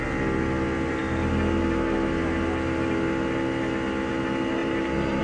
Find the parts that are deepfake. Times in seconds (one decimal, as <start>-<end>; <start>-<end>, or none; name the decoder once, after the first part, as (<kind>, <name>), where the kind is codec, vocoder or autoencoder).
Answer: 4.6-5.2 (vocoder, BigVGAN v2)